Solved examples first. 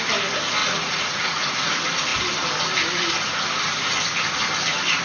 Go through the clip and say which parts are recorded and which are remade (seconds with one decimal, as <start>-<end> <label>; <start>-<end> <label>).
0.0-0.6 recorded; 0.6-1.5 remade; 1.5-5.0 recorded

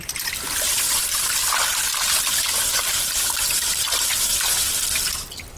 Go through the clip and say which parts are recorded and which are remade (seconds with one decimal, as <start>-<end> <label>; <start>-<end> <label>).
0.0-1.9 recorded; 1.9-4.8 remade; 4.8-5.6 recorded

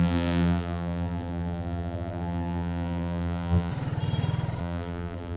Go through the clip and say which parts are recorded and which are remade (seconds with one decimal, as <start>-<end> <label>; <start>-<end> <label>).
0.0-3.7 remade; 3.7-4.6 recorded; 4.6-5.4 remade

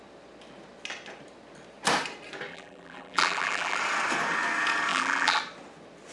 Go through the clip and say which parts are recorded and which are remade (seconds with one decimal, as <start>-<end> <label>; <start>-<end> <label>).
0.0-2.5 recorded; 2.5-3.8 remade; 3.8-4.9 recorded; 4.9-5.4 remade; 5.4-6.1 recorded